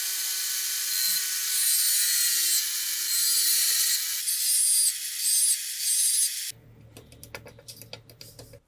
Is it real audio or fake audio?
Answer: real